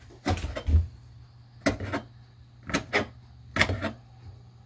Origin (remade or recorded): recorded